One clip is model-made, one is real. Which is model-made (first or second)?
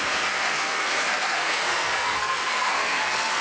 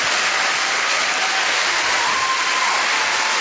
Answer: first